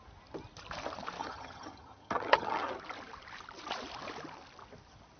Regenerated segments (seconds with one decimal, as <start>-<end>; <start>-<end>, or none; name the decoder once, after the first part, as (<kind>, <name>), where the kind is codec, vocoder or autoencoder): 1.2-2.7 (vocoder, HiFi-GAN)